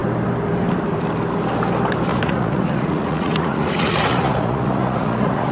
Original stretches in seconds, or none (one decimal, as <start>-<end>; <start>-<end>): 0.0-2.1